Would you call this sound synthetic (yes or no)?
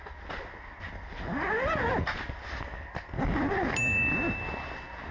no